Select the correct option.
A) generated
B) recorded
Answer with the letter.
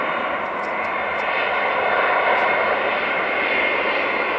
B